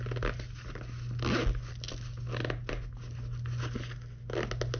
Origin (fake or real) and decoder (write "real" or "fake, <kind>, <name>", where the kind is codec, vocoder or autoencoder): real